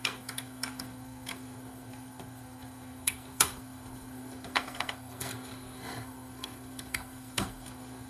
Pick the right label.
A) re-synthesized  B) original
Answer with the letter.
A